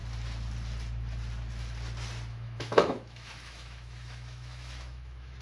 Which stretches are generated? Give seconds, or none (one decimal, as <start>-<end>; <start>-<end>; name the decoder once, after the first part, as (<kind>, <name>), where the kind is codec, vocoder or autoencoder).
2.3-5.4 (autoencoder, DAC-VAE)